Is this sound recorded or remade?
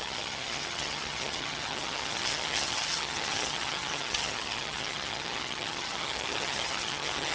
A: remade